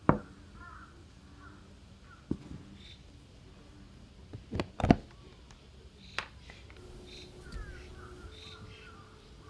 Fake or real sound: real